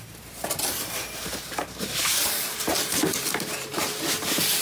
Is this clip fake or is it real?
fake